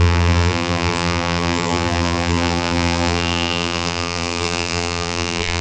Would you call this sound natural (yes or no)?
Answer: no